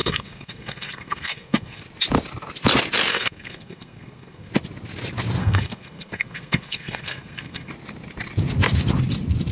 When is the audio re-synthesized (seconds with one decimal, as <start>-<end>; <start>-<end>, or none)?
0.0-1.8; 3.1-4.5; 5.4-7.7